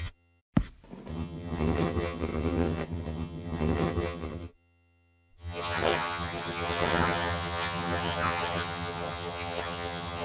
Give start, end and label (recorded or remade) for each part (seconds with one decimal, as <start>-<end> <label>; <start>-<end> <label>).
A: 0.0-0.4 remade; 0.4-1.1 recorded; 1.1-10.2 remade